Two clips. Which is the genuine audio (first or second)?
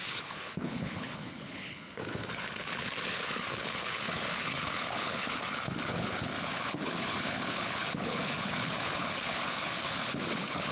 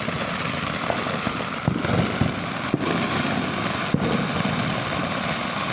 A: second